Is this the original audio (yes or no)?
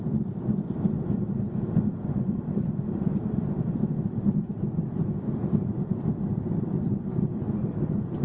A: no